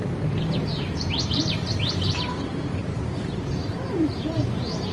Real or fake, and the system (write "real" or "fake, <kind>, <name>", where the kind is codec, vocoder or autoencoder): fake, vocoder, BigVGAN v2